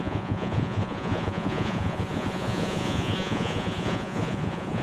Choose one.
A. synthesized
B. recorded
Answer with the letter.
A